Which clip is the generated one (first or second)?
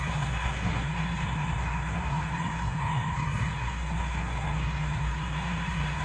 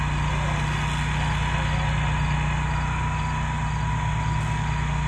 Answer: first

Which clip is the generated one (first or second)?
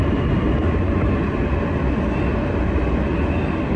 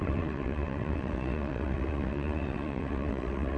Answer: second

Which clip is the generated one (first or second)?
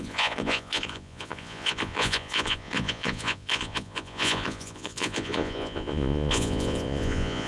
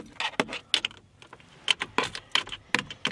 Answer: first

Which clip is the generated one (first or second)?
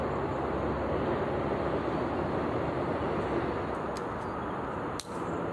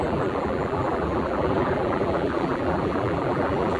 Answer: second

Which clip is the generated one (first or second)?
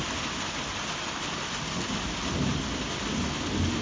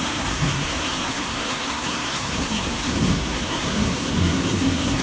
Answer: second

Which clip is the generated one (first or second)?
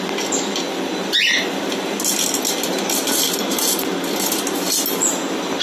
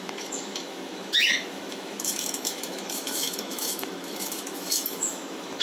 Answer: second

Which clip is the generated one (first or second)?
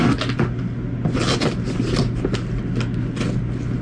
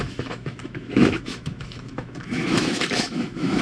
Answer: second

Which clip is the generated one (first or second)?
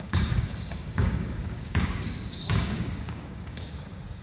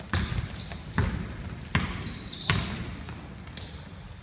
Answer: first